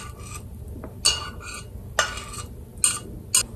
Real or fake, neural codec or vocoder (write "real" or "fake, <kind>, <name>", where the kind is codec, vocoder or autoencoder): real